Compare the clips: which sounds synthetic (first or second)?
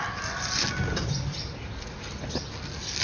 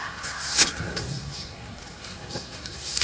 second